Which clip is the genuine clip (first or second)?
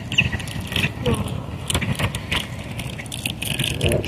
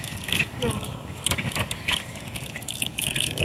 first